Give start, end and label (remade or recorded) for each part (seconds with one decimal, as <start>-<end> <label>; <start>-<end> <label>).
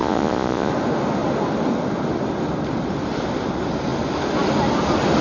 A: 0.0-0.7 remade; 0.7-5.2 recorded